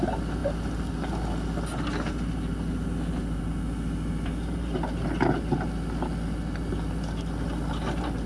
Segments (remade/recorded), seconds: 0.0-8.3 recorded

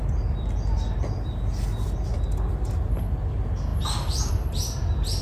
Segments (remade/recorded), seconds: 0.0-5.2 recorded